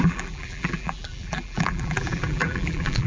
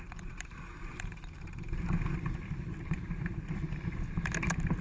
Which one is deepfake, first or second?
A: first